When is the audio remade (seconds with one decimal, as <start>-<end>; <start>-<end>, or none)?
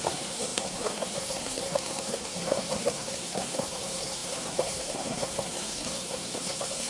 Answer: 0.0-6.9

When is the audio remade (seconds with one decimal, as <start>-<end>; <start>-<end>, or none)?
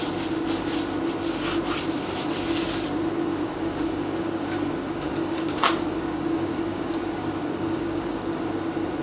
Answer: 3.3-8.5